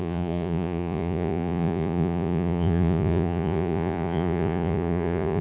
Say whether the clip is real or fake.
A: fake